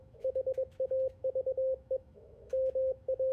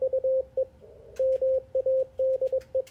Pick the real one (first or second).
second